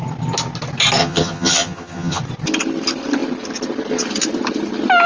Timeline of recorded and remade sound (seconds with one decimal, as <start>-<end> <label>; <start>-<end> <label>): 0.0-1.0 recorded; 1.0-2.2 remade; 2.2-5.1 recorded